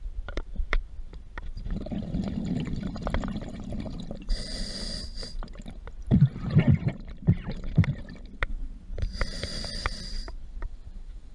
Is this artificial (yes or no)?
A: yes